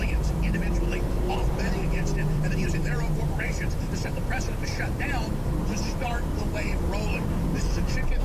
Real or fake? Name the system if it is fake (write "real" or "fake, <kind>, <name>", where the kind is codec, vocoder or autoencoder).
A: fake, vocoder, BigVGAN v2